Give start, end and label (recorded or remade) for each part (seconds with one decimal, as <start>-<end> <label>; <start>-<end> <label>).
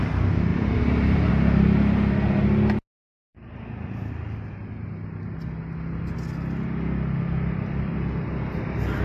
0.0-0.5 recorded; 0.5-1.3 remade; 1.3-3.1 recorded; 3.1-4.1 remade; 4.1-9.0 recorded